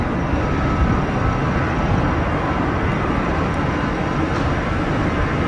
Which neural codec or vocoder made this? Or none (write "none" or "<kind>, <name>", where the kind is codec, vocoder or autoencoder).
vocoder, BigVGAN v2